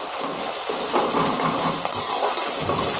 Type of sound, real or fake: real